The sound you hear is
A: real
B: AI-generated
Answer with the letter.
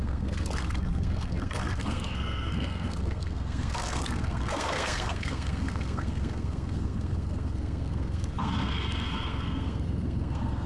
B